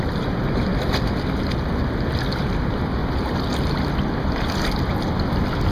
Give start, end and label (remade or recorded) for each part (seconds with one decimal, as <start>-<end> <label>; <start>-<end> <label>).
0.0-0.7 remade; 0.7-2.4 recorded; 2.4-3.0 remade; 3.0-5.7 recorded